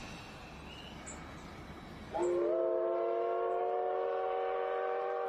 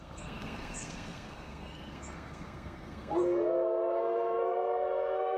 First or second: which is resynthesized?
second